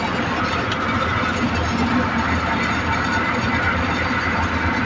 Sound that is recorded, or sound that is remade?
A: recorded